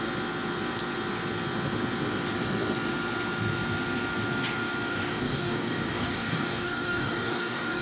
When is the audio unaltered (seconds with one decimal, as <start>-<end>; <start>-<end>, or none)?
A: 0.0-4.9

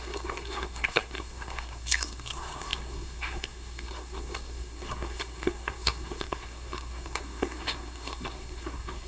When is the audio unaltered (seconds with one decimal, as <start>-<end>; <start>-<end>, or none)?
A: none

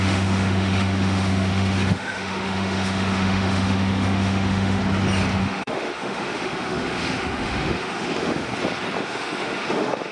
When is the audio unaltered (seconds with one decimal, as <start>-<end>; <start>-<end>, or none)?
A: 4.8-5.4; 8.5-9.0

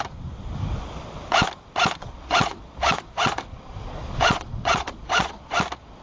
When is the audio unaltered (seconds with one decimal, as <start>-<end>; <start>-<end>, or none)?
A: 0.0-2.0; 5.6-6.0

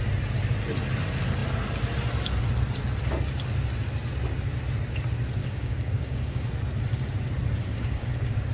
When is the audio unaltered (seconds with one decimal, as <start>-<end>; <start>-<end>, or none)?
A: 0.0-5.4; 6.5-7.7

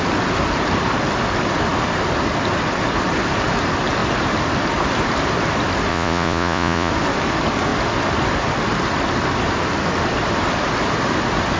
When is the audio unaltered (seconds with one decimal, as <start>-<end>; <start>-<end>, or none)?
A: 0.0-5.9; 6.9-11.6

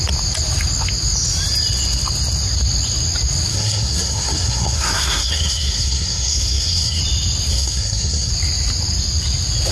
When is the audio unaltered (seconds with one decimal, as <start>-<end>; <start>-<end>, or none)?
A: 0.0-3.5; 7.0-7.5; 8.3-9.7